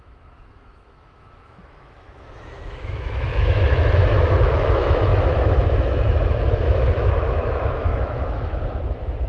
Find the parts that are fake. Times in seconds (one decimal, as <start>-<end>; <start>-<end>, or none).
0.0-9.3